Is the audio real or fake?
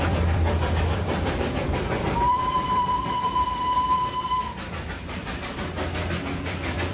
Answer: fake